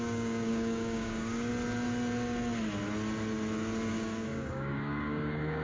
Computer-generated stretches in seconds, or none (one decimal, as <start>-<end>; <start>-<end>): 0.0-1.5; 3.9-5.6